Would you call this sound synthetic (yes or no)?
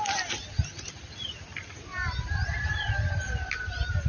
no